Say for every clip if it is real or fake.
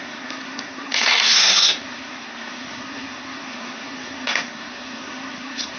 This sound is fake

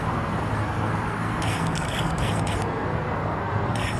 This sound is fake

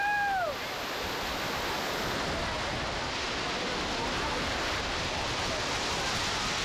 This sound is real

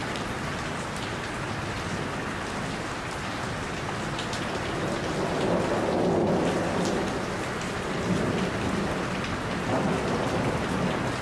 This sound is real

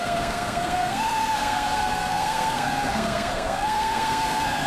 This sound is fake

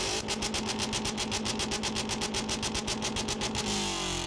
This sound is real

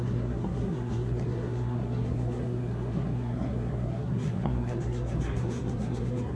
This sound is fake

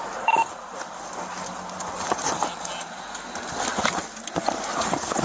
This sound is real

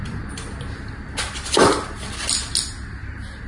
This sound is real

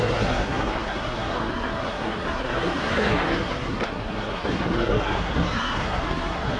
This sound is fake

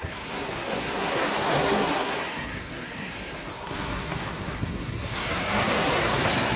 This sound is fake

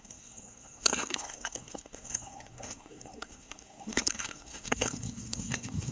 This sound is fake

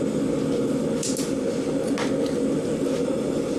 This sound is real